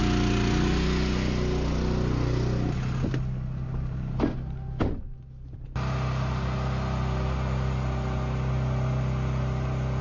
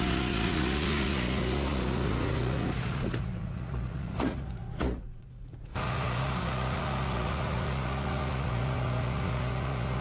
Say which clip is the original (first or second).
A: first